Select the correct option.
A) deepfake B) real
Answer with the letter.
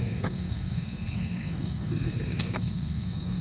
A